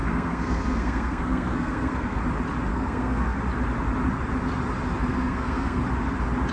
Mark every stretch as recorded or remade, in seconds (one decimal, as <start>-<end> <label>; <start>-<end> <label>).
0.0-2.2 remade; 2.2-2.7 recorded; 2.7-3.4 remade; 3.4-5.1 recorded; 5.1-5.8 remade; 5.8-6.5 recorded